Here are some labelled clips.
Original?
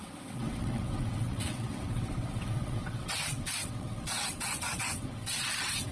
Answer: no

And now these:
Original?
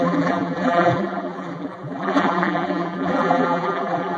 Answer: no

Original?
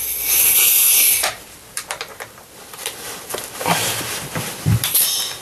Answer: no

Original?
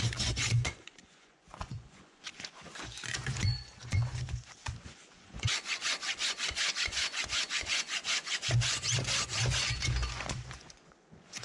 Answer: no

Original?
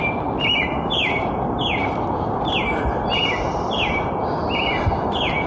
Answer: yes